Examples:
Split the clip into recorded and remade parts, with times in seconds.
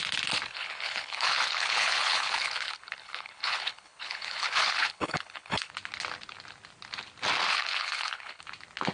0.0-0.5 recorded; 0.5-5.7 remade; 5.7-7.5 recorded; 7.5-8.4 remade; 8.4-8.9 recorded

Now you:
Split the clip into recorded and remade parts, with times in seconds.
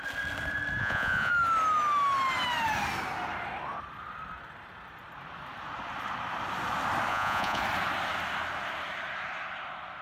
0.0-0.8 recorded; 0.8-1.3 remade; 1.3-7.1 recorded; 7.1-7.6 remade; 7.6-10.0 recorded